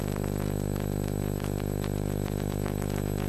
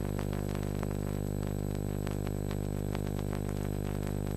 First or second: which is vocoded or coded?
first